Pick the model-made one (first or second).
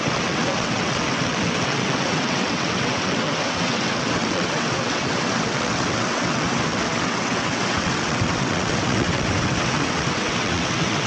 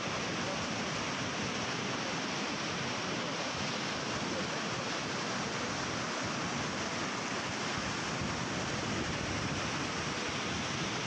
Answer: first